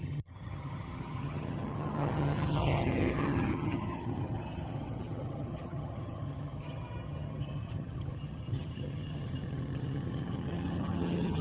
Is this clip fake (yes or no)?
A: yes